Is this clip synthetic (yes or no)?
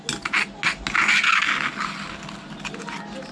no